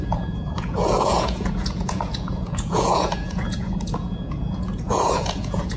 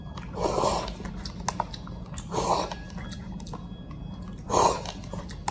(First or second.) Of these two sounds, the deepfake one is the first